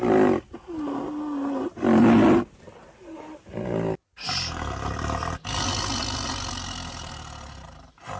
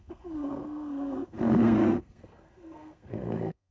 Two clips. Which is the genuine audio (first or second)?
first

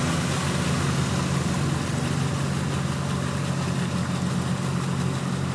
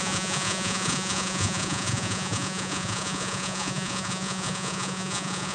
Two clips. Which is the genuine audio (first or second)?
first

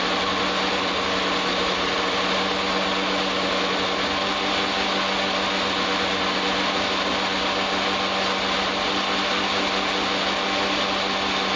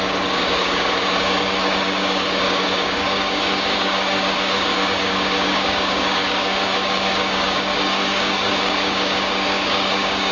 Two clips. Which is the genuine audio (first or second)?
first